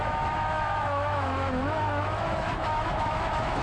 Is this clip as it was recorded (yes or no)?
no